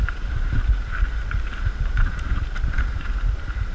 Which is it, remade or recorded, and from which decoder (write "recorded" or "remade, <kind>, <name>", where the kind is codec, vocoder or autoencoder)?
remade, vocoder, BigVGAN v2